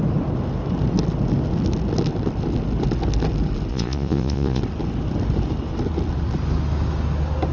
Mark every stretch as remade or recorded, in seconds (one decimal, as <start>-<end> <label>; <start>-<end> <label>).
0.0-3.7 recorded; 3.7-4.6 remade; 4.6-7.5 recorded